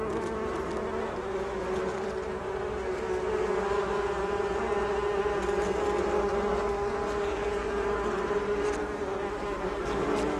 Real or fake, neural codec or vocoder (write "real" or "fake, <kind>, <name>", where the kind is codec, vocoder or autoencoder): real